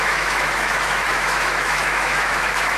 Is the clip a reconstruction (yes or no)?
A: yes